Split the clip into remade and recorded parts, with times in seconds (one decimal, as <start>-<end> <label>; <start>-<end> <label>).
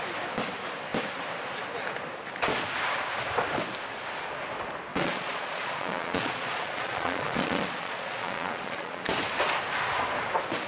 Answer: 0.0-4.9 recorded; 4.9-9.0 remade; 9.0-10.7 recorded